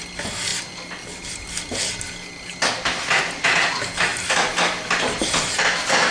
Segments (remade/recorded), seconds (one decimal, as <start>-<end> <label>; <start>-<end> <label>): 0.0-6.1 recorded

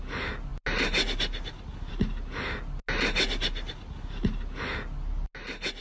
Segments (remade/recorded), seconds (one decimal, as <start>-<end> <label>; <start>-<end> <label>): 0.0-5.8 recorded

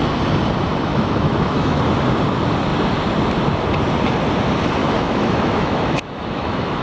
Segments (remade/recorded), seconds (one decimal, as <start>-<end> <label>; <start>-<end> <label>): 0.0-0.9 recorded; 0.9-1.8 remade; 1.8-4.8 recorded; 4.8-6.8 remade

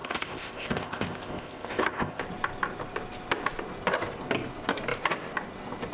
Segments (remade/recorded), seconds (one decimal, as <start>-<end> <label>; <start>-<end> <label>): 0.0-2.2 remade; 2.2-5.9 recorded

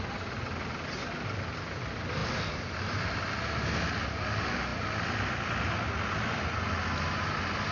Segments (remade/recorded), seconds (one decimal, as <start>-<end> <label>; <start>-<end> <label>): 0.0-7.7 recorded

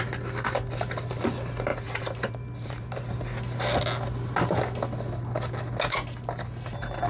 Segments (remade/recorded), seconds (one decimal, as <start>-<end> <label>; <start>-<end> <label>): 0.0-1.7 recorded; 1.7-3.1 remade; 3.1-7.1 recorded